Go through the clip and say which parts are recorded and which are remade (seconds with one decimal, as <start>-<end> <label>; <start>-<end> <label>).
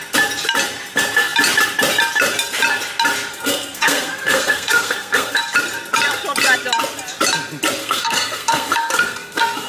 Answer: 0.0-3.3 recorded; 3.3-5.4 remade; 5.4-7.8 recorded; 7.8-9.7 remade